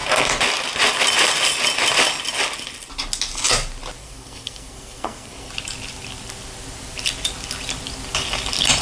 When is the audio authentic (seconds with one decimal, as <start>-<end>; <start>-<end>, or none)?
0.0-4.0; 5.5-8.8